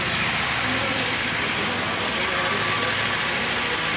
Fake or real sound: real